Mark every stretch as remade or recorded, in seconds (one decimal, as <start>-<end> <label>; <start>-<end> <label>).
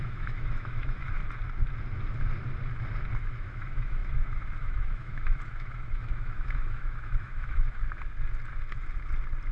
0.0-1.2 remade; 1.2-3.2 recorded; 3.2-7.8 remade; 7.8-9.5 recorded